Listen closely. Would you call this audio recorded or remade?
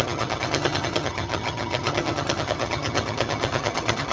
remade